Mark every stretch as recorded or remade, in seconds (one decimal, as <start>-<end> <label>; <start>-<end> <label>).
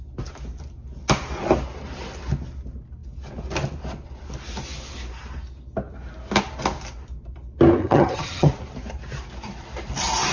0.0-7.8 recorded; 7.8-8.5 remade; 8.5-10.3 recorded